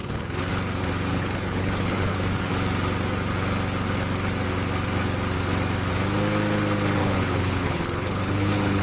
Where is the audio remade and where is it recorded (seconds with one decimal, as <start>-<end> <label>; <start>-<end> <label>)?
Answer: 0.0-0.5 remade; 0.5-1.1 recorded; 1.1-2.5 remade; 2.5-7.0 recorded; 7.0-8.8 remade